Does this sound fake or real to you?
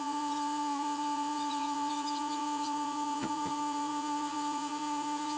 fake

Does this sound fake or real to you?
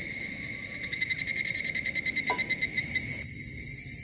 real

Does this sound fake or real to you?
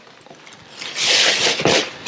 real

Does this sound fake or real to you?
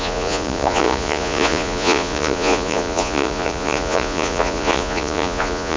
fake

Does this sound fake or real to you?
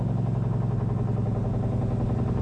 real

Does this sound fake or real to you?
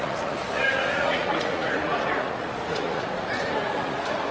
fake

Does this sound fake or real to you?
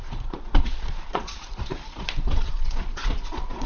fake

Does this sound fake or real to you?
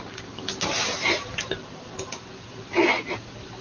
real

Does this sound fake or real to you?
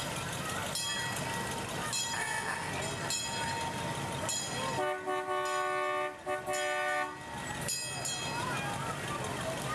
real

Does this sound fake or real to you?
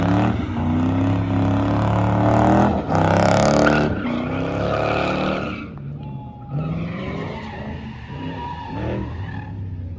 real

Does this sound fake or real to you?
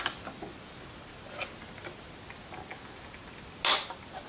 real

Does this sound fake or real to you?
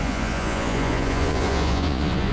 fake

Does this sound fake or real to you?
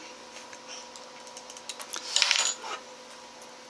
real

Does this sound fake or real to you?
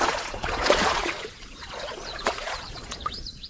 fake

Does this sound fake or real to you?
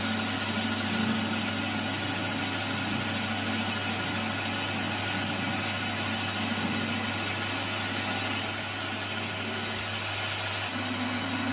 real